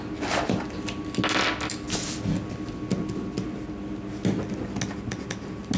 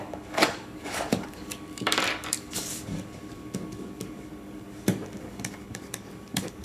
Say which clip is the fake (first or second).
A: second